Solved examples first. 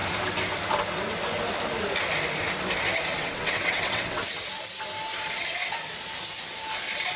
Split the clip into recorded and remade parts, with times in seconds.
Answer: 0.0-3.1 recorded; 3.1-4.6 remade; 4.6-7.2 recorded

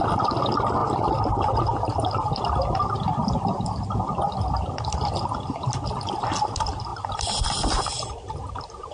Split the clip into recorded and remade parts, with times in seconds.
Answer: 0.0-8.9 recorded

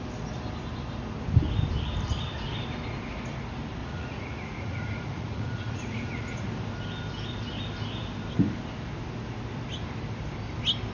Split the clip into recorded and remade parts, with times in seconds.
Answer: 0.0-3.8 recorded; 3.8-6.5 remade; 6.5-10.9 recorded

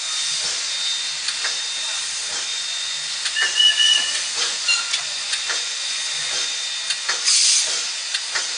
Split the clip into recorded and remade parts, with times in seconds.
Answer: 0.0-2.5 recorded; 2.5-6.7 remade; 6.7-8.6 recorded

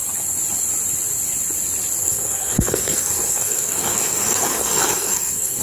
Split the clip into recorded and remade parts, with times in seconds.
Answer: 0.0-2.0 recorded; 2.0-5.6 remade

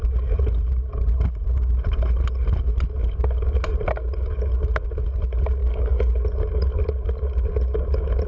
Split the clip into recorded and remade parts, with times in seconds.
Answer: 0.0-5.6 recorded; 5.6-6.1 remade; 6.1-8.3 recorded

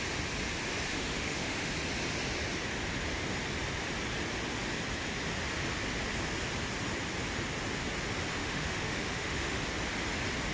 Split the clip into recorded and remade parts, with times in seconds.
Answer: 0.0-0.9 recorded; 0.9-1.7 remade; 1.7-8.4 recorded; 8.4-9.6 remade; 9.6-10.5 recorded

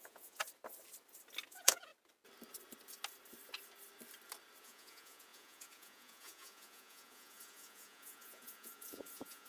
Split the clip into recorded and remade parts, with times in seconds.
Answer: 0.0-0.4 remade; 0.4-1.5 recorded; 1.5-1.9 remade; 1.9-4.6 recorded; 4.6-9.5 remade